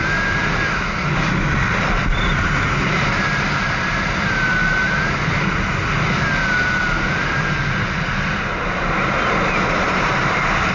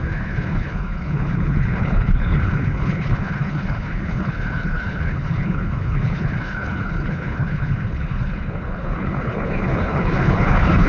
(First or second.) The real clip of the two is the first